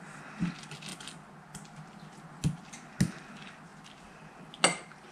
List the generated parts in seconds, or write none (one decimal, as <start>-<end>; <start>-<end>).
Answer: none